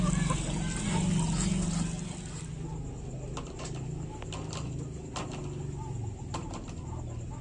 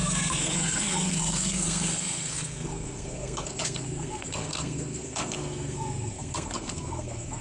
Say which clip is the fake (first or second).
second